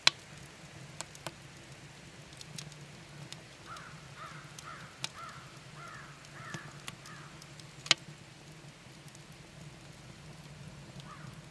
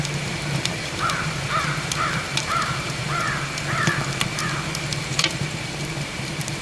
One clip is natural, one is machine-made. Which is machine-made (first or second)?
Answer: second